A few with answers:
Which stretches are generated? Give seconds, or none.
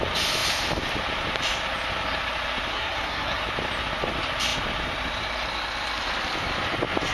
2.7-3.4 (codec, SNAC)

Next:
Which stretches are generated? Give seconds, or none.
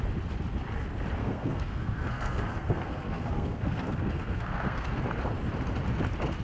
1.2-5.0 (codec, SNAC)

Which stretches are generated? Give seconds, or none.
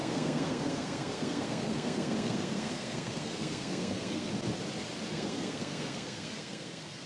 0.0-4.3 (codec, SNAC); 5.1-7.1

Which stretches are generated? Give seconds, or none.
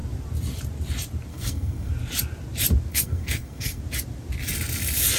1.3-1.9 (codec, SNAC); 2.9-3.8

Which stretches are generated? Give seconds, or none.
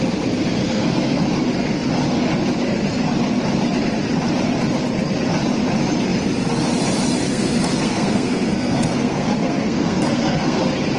0.6-1.2 (codec, SNAC); 7.3-10.6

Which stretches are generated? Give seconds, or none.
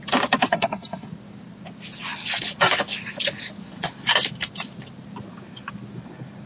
0.5-1.1 (codec, SNAC)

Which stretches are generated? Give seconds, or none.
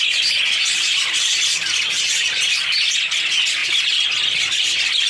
none